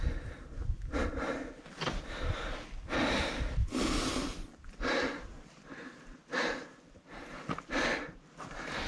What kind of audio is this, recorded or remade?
remade